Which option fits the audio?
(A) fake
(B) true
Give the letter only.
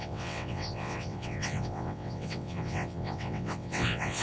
A